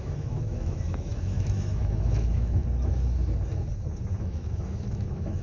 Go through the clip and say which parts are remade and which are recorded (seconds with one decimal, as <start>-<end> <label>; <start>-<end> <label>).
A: 0.0-2.6 remade; 2.6-4.2 recorded; 4.2-5.4 remade